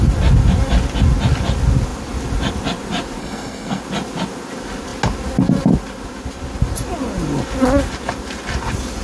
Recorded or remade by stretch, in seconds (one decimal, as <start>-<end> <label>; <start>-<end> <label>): 0.0-3.2 recorded; 3.2-3.8 remade; 3.8-9.0 recorded